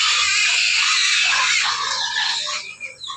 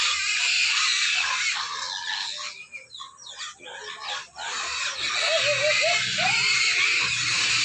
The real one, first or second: second